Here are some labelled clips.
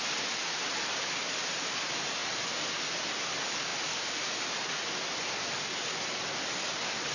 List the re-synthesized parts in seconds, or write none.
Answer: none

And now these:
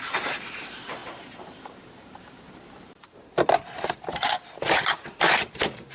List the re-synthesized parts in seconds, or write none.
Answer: 0.0-5.9 (vocoder, BigVGAN v2)

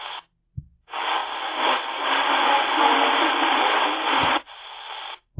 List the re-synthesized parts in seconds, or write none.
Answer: 1.2-4.4 (vocoder, BigVGAN v2)

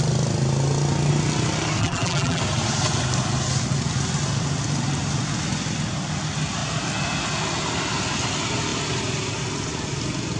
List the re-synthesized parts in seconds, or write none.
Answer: 1.8-2.4 (vocoder, BigVGAN v2)

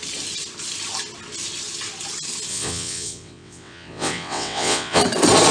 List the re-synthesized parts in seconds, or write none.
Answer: 2.5-5.0 (vocoder, WaveNeXt)

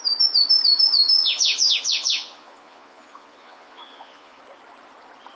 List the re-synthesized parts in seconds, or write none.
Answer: 1.2-4.4 (vocoder, Vocos)